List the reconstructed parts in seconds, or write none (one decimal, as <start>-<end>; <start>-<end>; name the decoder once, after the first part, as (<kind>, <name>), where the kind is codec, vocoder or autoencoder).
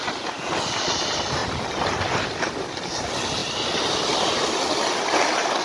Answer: none